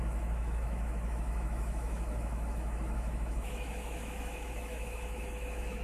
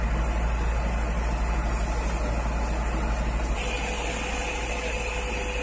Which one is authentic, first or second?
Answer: second